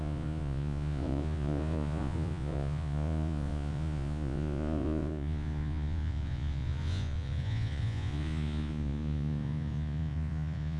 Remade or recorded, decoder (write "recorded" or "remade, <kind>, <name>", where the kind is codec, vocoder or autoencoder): remade, vocoder, Vocos